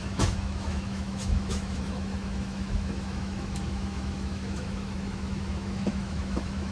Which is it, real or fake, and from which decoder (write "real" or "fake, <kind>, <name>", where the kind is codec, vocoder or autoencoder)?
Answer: fake, autoencoder, DAC-VAE